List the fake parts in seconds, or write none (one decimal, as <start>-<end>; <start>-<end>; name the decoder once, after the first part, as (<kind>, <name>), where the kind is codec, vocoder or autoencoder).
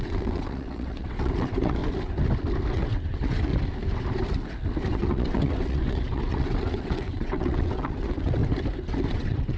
0.0-1.8 (vocoder, WaveNeXt); 2.7-3.5; 4.9-8.4; 9.1-9.6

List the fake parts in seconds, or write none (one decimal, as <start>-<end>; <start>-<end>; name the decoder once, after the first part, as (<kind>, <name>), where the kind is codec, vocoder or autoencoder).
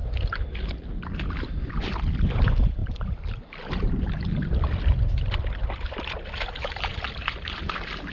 none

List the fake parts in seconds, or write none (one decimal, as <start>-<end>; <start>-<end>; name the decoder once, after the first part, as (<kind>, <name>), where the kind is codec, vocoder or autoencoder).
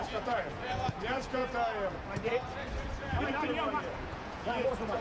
0.0-1.4 (vocoder, Vocos); 3.8-5.0